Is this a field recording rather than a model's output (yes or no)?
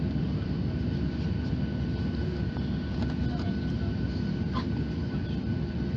yes